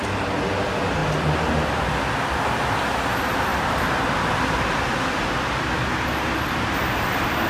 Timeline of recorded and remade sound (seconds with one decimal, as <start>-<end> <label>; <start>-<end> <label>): 0.0-3.5 recorded; 3.5-5.0 remade; 5.0-7.5 recorded

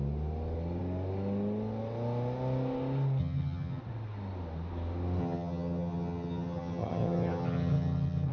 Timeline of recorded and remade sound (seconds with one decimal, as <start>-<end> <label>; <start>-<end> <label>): 0.0-3.2 recorded; 3.2-3.8 remade; 3.8-5.2 recorded; 5.2-8.3 remade

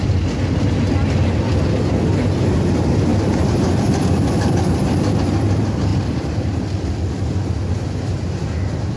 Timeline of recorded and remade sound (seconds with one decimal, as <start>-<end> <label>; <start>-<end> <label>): 0.0-3.1 recorded; 3.1-5.2 remade; 5.2-5.9 recorded; 5.9-7.3 remade; 7.3-9.0 recorded

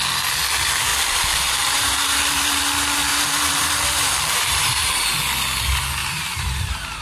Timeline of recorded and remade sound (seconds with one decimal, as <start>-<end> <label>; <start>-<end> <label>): 0.0-0.9 recorded; 0.9-2.6 remade; 2.6-3.1 recorded; 3.1-4.9 remade; 4.9-6.0 recorded; 6.0-7.0 remade

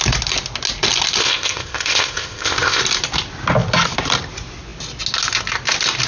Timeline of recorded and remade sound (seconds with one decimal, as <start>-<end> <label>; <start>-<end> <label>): 0.0-1.2 recorded; 1.2-2.8 remade; 2.8-6.1 recorded

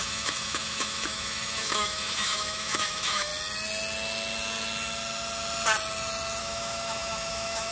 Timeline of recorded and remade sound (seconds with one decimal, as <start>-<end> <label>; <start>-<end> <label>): 0.0-3.3 remade; 3.3-6.4 recorded; 6.4-7.7 remade

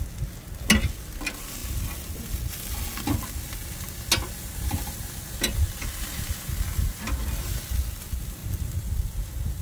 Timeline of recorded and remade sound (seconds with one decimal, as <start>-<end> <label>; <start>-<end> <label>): 0.0-9.6 recorded

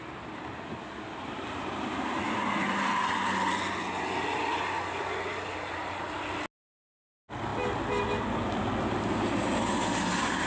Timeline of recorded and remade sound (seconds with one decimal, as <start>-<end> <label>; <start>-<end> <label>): 0.0-10.5 recorded